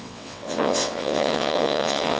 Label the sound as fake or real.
fake